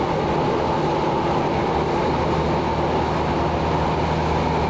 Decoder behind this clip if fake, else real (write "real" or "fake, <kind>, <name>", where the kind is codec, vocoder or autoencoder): real